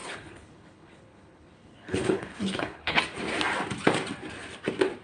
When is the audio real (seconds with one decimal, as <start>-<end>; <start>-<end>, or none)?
3.0-5.0